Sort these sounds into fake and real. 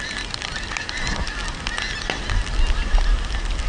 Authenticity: real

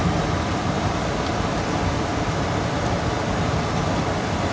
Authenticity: real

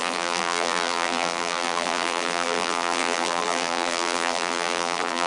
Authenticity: fake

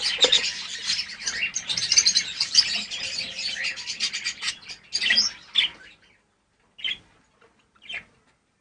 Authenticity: real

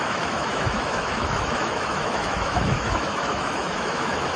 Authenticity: fake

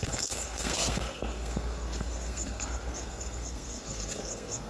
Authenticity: fake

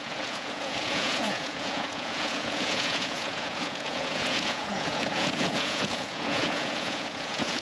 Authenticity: fake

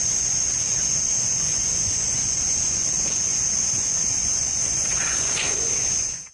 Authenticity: fake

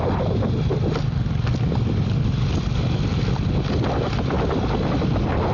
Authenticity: real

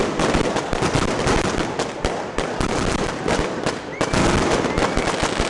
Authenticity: real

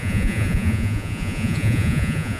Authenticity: fake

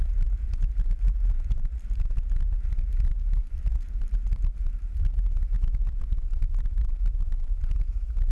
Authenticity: fake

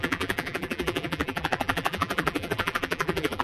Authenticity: fake